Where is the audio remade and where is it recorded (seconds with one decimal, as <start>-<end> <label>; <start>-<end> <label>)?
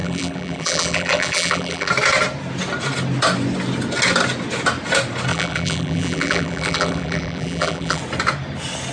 0.0-1.9 remade; 1.9-5.3 recorded; 5.3-8.0 remade; 8.0-8.9 recorded